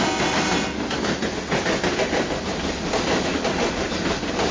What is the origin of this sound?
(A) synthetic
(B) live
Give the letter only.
B